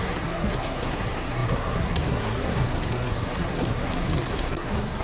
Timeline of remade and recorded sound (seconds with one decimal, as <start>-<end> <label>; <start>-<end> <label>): 0.0-5.0 remade